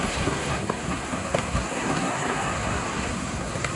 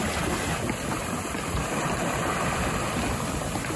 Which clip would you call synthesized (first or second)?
first